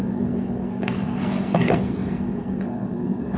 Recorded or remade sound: remade